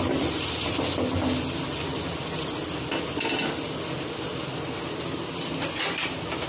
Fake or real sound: real